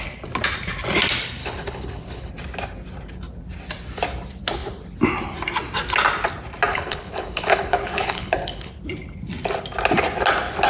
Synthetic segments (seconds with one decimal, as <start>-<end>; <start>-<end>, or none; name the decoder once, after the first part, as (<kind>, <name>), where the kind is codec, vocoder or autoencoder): 1.4-2.3 (codec, HILCodec); 6.7-8.7

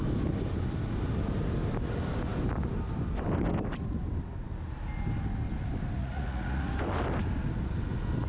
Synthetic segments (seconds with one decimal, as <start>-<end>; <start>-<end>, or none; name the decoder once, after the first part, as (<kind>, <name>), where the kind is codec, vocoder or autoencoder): 6.0-6.7 (vocoder, Vocos)

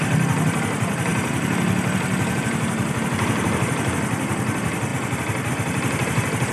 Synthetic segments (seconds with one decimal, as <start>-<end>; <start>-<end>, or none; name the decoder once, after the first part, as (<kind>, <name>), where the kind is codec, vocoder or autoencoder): 0.0-1.1 (vocoder, BigVGAN v2); 2.4-4.9; 5.5-6.5

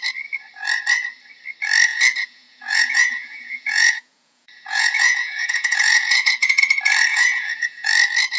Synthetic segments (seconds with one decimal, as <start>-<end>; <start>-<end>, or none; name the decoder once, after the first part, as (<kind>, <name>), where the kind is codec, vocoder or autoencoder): 1.9-6.6 (vocoder, Vocos); 7.1-7.9

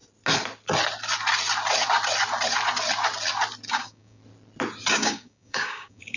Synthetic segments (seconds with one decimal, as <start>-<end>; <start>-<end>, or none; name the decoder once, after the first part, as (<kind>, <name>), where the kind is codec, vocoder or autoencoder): 3.7-4.2 (codec, DAC); 4.9-6.2

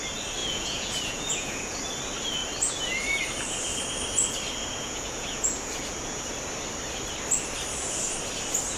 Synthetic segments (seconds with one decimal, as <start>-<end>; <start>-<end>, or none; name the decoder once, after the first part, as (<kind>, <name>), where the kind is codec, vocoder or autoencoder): 0.4-1.8 (vocoder, Vocos); 4.6-6.2